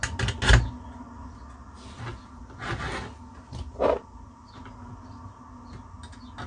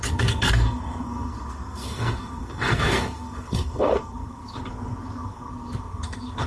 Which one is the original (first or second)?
first